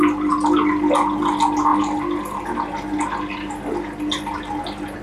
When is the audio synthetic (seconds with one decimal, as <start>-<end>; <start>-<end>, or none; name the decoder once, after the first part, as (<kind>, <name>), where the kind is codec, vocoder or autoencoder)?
none